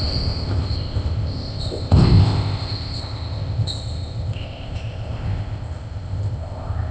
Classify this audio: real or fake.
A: fake